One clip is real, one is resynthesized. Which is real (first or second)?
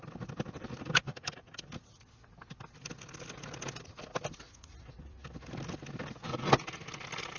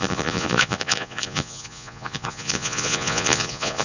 first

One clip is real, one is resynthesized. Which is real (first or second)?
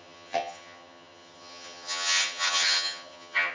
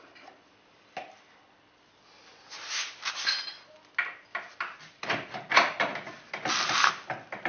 second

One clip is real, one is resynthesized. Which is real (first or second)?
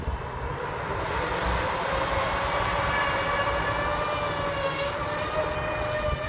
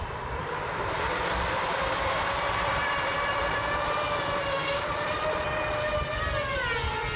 first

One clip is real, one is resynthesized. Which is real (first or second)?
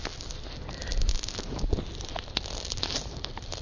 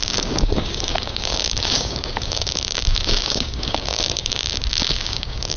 first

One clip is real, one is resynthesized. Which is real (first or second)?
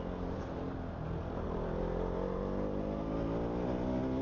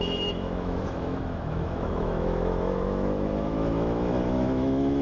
first